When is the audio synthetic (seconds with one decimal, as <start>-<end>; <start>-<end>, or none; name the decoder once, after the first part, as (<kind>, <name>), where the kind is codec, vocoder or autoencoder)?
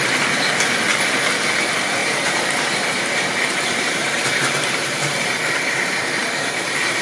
2.0-5.4 (vocoder, BigVGAN v2); 6.2-7.0